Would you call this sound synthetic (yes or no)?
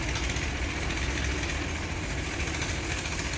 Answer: no